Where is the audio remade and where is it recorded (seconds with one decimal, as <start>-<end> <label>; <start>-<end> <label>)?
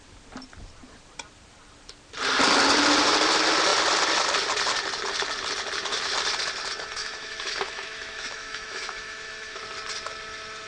0.0-7.0 recorded; 7.0-9.6 remade; 9.6-10.7 recorded